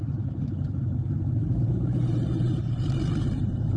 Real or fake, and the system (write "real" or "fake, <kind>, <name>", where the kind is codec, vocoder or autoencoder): fake, vocoder, BigVGAN v2